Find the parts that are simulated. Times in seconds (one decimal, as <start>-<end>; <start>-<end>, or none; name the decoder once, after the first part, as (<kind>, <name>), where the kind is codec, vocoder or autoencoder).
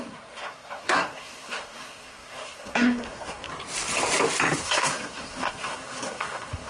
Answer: 0.0-3.5 (codec, SNAC); 4.6-6.7